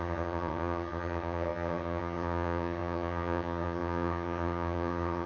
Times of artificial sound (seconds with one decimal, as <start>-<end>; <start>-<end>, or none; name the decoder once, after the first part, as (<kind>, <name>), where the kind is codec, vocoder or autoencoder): 0.0-5.3 (vocoder, HiFi-GAN)